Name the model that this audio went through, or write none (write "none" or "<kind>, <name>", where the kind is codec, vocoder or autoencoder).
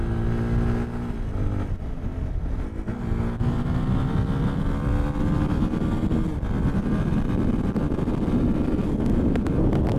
none